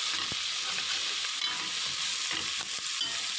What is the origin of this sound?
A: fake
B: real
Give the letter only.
B